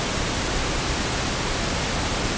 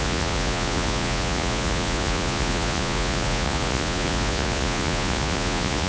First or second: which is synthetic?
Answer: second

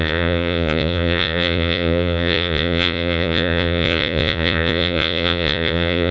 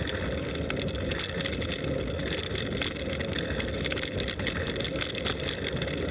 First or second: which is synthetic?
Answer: first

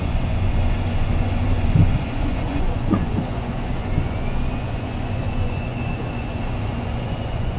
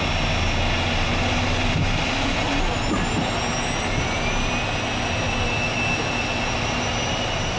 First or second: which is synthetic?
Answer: first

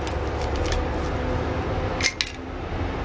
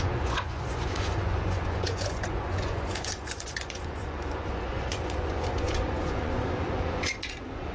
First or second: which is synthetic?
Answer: second